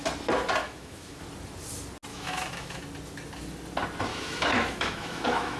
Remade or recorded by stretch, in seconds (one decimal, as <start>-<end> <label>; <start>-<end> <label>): 0.0-0.6 recorded; 0.6-1.2 remade; 1.2-2.1 recorded; 2.1-2.8 remade; 2.8-4.1 recorded; 4.1-5.6 remade